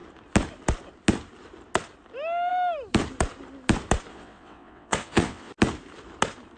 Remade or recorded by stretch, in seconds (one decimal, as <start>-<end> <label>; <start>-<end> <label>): 0.0-4.1 recorded; 4.1-5.5 remade; 5.5-6.6 recorded